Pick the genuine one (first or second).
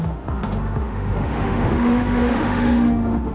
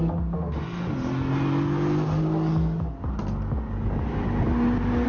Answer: second